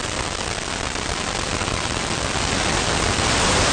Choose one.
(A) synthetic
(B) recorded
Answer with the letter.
B